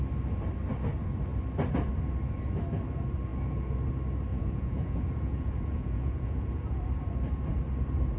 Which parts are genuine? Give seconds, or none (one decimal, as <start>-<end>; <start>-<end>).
0.0-4.3; 6.8-8.2